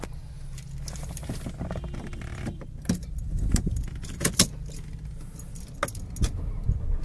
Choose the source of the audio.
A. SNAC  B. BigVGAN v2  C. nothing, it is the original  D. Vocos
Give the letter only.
C